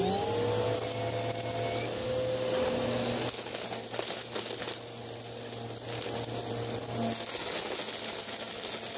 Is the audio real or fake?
real